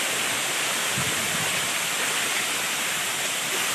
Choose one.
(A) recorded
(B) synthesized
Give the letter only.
A